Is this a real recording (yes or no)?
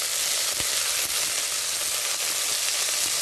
yes